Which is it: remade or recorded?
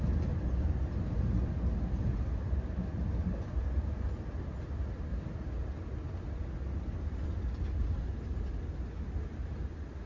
recorded